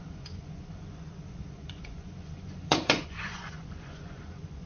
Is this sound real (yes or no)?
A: no